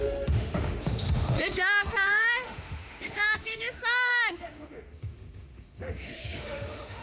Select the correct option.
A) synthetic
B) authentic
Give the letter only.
A